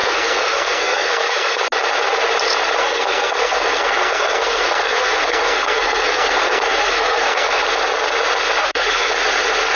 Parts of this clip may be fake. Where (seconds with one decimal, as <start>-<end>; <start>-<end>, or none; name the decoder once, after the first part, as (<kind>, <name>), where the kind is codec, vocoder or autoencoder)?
0.0-1.6 (codec, SNAC); 2.8-7.6; 8.6-9.1